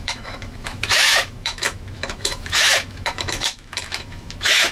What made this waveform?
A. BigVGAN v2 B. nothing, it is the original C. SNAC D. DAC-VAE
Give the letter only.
D